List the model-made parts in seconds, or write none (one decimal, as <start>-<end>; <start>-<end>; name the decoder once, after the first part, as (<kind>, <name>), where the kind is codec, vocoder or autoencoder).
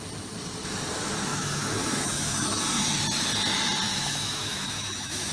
1.3-2.6 (autoencoder, DAC-VAE); 3.9-5.3